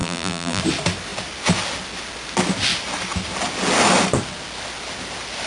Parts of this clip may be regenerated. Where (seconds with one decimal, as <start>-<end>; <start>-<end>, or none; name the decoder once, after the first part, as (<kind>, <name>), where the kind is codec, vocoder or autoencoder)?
0.0-0.6 (vocoder, BigVGAN v2)